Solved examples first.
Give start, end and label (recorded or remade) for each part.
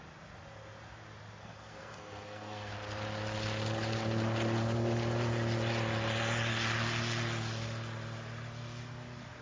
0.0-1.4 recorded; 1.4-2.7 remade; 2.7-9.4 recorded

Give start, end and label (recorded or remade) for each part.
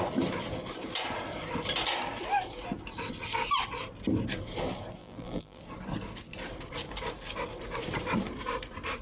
0.0-5.0 recorded; 5.0-5.6 remade; 5.6-9.0 recorded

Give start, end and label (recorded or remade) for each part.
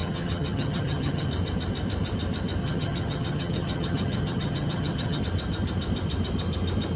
0.0-1.3 remade; 1.3-2.6 recorded; 2.6-5.2 remade; 5.2-7.0 recorded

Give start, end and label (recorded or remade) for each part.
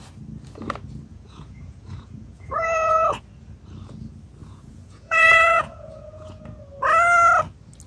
0.0-1.1 recorded; 1.1-3.2 remade; 3.2-4.4 recorded; 4.4-6.4 remade; 6.4-7.9 recorded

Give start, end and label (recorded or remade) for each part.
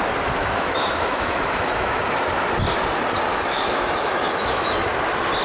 0.0-0.4 recorded; 0.4-2.0 remade; 2.0-3.3 recorded; 3.3-4.7 remade; 4.7-5.4 recorded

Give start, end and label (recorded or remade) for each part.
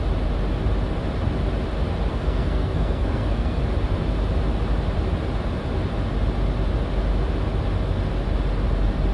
0.0-2.1 recorded; 2.1-3.6 remade; 3.6-9.1 recorded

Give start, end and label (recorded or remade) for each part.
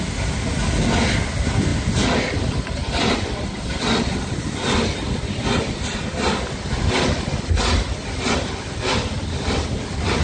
0.0-10.2 recorded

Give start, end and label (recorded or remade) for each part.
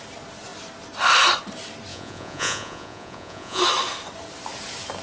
0.0-1.9 recorded; 1.9-3.6 remade; 3.6-5.0 recorded